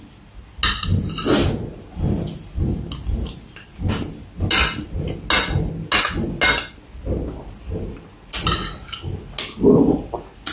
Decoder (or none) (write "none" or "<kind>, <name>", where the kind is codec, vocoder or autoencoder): none